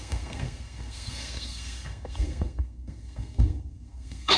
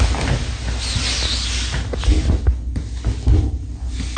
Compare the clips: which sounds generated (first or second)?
first